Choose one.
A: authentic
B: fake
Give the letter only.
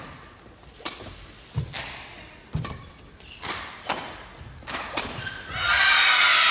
A